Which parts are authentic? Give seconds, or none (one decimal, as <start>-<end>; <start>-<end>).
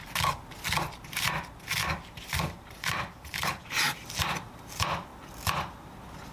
0.0-1.8; 4.2-6.3